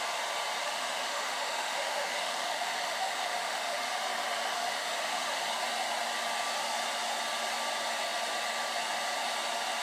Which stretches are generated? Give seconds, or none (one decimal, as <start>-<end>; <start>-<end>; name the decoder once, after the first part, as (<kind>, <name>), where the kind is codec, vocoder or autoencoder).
0.6-4.0 (autoencoder, DAC-VAE); 4.5-5.5